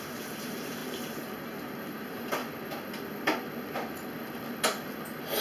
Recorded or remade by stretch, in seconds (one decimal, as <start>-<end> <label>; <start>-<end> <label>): 0.0-2.4 remade; 2.4-5.4 recorded